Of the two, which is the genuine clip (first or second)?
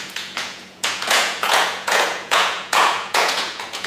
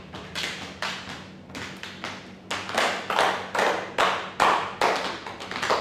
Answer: second